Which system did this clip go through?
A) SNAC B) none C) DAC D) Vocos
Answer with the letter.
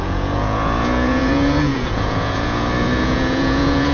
D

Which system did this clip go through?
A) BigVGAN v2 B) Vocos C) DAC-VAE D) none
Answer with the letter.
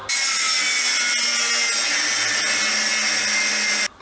D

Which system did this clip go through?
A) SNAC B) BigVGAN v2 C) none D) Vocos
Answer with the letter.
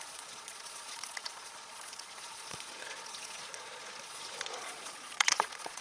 D